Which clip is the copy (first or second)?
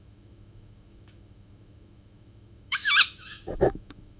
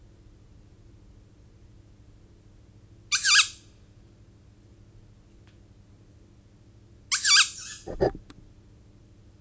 first